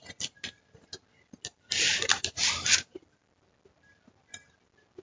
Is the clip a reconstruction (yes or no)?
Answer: no